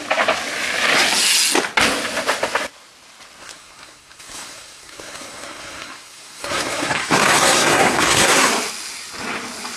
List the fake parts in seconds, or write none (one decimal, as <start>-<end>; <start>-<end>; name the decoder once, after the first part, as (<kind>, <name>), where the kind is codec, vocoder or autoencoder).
3.4-8.5 (codec, SNAC)